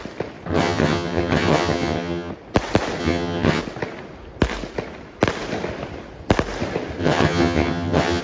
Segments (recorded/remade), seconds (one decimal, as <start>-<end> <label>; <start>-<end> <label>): 0.0-0.5 recorded; 0.5-2.3 remade; 2.3-3.0 recorded; 3.0-3.6 remade; 3.6-7.0 recorded; 7.0-8.2 remade